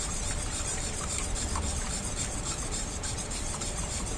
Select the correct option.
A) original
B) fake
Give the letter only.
B